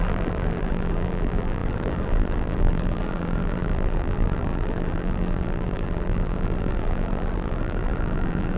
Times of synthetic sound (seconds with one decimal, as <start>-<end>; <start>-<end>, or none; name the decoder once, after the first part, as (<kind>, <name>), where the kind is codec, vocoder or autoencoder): 0.0-8.6 (vocoder, BigVGAN v2)